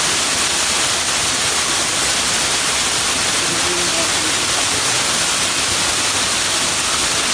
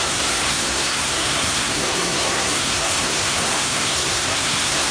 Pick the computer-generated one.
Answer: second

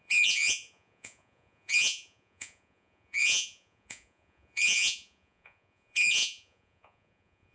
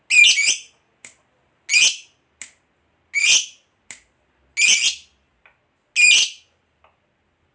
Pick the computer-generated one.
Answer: first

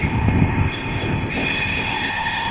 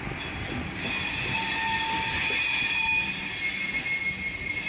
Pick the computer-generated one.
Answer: first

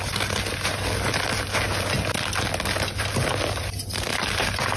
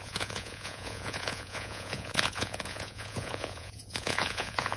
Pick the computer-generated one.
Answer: second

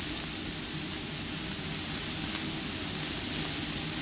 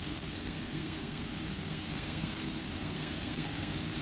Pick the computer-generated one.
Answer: second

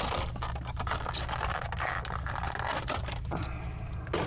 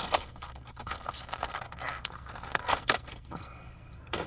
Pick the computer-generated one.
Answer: second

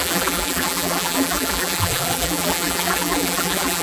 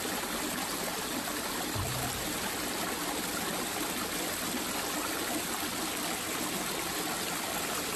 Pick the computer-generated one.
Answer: first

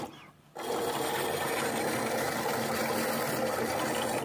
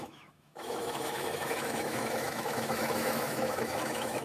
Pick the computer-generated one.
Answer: second